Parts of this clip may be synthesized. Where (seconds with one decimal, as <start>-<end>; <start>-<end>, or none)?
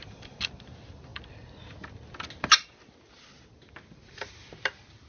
none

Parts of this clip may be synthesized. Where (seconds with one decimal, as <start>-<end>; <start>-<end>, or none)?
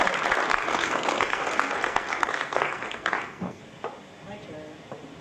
0.5-3.6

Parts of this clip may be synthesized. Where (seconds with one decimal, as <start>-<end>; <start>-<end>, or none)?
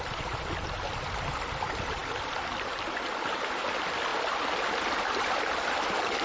0.0-4.1; 4.9-6.2